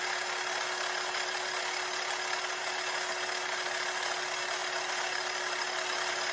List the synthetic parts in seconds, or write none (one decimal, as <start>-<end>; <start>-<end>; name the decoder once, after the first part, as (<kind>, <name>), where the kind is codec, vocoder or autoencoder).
none